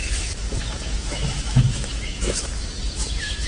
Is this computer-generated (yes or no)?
yes